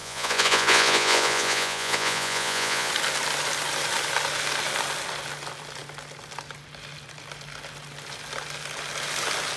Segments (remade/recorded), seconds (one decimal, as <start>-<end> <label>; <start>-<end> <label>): 0.0-2.9 remade; 2.9-9.6 recorded